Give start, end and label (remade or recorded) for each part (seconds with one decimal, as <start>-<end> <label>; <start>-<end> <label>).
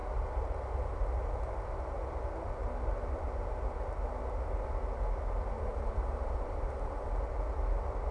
0.0-5.7 recorded; 5.7-7.1 remade; 7.1-8.1 recorded